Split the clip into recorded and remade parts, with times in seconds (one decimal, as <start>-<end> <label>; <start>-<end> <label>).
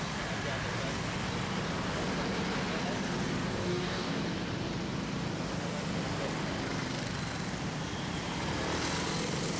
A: 0.0-3.6 recorded; 3.6-4.2 remade; 4.2-9.6 recorded